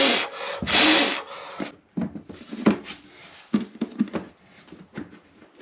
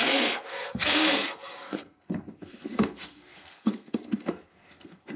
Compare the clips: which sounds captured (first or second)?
first